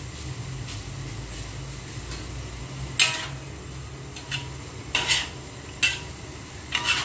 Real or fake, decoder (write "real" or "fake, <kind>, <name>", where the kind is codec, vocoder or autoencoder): real